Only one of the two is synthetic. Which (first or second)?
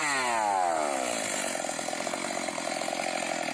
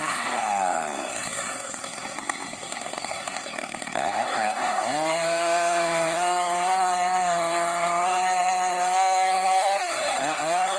second